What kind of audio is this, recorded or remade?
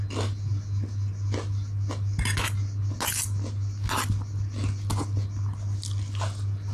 recorded